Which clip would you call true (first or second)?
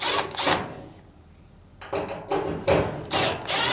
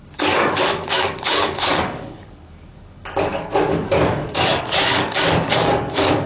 first